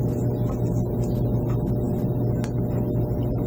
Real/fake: real